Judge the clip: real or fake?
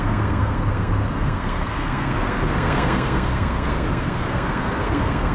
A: fake